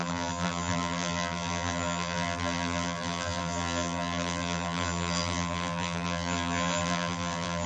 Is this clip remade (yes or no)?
yes